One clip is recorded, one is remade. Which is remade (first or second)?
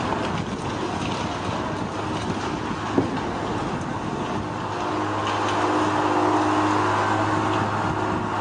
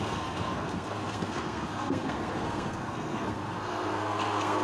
second